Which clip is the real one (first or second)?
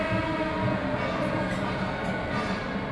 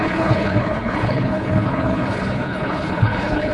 first